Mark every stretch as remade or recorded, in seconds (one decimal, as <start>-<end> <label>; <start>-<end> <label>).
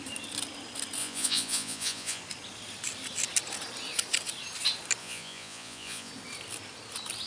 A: 0.0-1.0 recorded; 1.0-2.2 remade; 2.2-5.0 recorded; 5.0-6.1 remade; 6.1-7.3 recorded